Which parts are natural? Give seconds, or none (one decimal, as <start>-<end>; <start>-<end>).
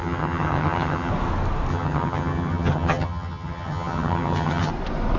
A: 1.1-1.7; 4.7-5.2